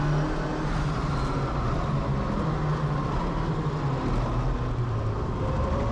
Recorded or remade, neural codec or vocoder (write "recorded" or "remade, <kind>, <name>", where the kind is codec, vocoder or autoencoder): recorded